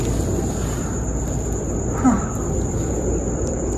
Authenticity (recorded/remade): remade